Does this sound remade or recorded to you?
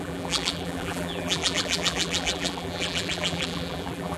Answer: remade